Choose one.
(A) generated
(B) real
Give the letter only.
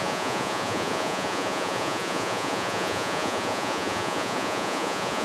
A